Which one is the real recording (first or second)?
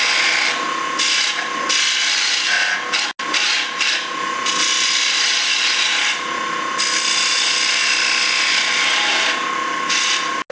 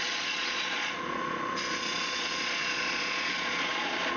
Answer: first